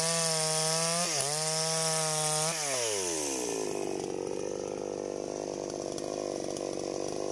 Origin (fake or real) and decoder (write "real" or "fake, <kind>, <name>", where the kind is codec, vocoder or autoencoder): real